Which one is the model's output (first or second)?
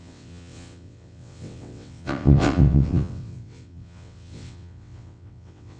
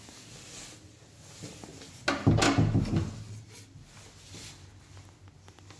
first